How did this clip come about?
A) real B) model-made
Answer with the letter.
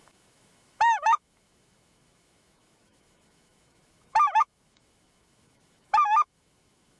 B